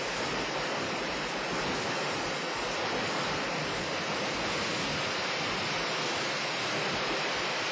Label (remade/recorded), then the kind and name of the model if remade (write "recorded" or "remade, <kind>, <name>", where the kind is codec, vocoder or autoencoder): recorded